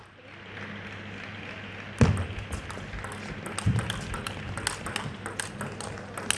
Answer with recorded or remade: recorded